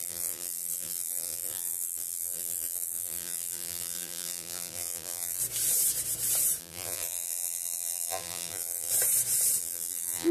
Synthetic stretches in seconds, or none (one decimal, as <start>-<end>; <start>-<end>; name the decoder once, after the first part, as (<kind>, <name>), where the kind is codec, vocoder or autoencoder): 0.0-5.4 (vocoder, BigVGAN v2); 6.6-8.9; 9.6-10.3